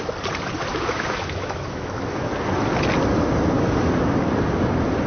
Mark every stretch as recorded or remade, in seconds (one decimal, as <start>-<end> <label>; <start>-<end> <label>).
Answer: 0.0-0.7 recorded; 0.7-2.3 remade; 2.3-5.1 recorded